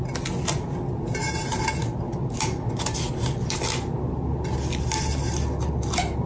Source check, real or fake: real